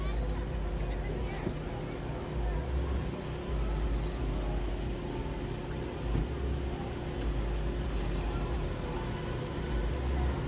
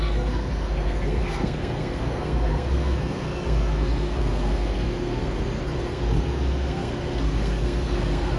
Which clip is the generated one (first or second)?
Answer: second